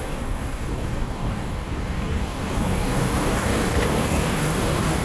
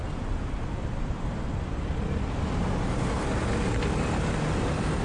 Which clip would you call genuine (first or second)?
second